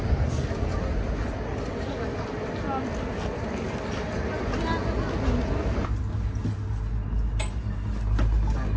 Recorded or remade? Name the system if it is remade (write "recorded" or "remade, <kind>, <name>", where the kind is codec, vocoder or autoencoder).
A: recorded